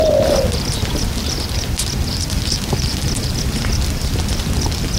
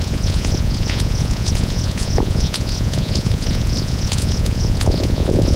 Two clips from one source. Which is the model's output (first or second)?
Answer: second